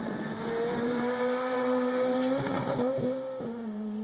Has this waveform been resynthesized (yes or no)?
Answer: yes